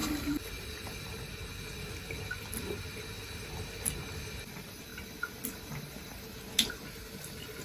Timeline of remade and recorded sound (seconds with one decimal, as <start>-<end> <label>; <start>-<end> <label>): 0.0-7.6 recorded